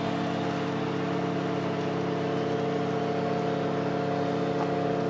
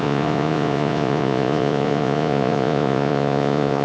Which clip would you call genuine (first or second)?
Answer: first